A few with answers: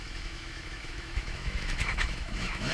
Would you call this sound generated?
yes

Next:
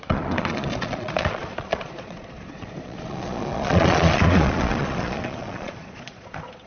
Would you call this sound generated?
yes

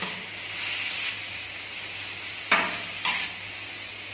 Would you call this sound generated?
no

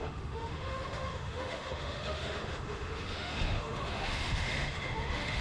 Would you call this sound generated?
yes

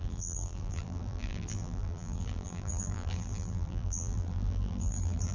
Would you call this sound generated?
yes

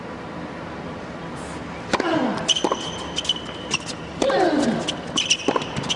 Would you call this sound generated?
no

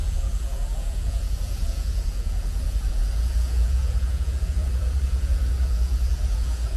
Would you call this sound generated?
yes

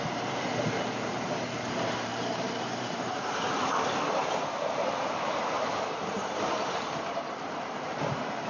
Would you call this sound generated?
yes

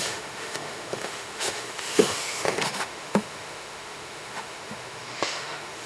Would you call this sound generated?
yes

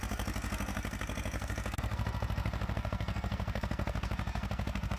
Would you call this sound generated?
yes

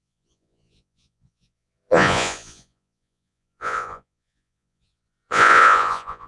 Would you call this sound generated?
yes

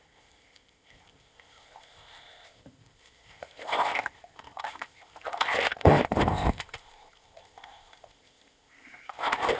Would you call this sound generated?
yes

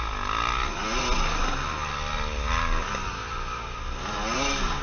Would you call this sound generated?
no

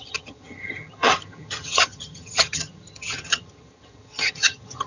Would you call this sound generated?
yes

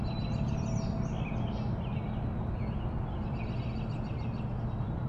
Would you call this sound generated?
no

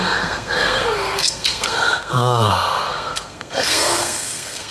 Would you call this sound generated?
yes